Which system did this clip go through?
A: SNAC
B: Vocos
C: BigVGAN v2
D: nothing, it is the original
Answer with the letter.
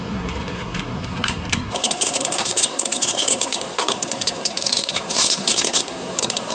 A